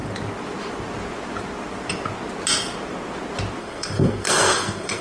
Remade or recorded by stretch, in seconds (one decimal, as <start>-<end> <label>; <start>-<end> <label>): 0.0-3.6 recorded; 3.6-5.0 remade